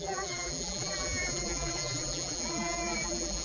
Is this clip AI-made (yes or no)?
yes